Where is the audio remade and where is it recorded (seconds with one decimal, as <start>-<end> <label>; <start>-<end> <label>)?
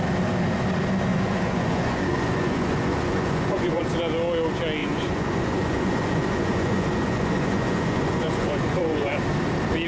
0.0-1.1 recorded; 1.1-3.8 remade; 3.8-4.8 recorded; 4.8-9.1 remade; 9.1-9.9 recorded